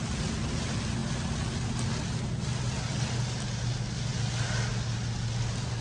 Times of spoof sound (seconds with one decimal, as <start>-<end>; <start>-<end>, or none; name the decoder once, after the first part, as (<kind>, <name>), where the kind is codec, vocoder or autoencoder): none